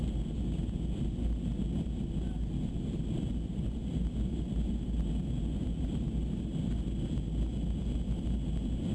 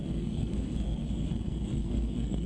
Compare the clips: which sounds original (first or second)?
first